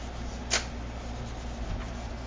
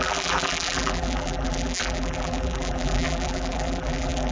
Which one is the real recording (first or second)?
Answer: first